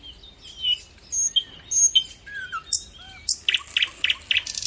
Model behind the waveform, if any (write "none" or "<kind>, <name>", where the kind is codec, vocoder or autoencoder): none